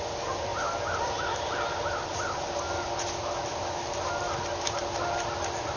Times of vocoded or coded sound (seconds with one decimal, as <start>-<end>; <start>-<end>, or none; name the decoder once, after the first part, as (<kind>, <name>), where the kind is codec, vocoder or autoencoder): none

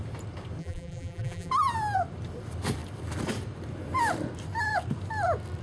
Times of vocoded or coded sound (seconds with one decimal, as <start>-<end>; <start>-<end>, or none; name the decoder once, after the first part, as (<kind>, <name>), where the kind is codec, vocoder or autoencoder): 0.6-1.5 (vocoder, BigVGAN v2)

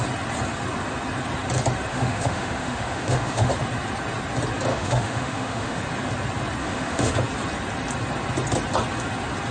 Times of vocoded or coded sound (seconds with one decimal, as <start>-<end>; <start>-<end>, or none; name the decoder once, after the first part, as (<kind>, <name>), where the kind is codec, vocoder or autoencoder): 1.9-3.5 (autoencoder, DAC-VAE); 4.7-5.8; 6.6-7.1

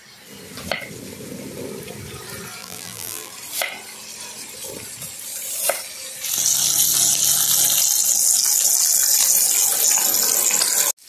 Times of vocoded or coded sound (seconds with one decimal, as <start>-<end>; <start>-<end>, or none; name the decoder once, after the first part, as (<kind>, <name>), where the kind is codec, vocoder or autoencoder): 2.6-3.3 (vocoder, BigVGAN v2)

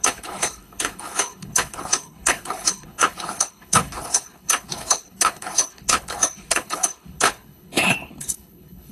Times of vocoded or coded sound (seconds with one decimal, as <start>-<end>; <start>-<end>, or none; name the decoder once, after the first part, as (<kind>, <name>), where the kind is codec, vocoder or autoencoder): 0.0-8.9 (codec, HILCodec)